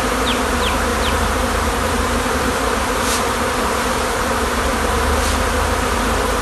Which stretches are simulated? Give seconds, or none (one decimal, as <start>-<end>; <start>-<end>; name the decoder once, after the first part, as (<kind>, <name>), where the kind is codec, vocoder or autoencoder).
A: 0.9-4.7 (vocoder, BigVGAN v2)